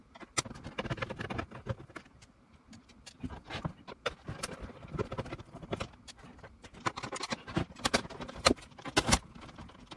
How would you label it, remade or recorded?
recorded